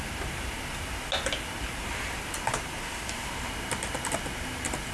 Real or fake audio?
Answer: real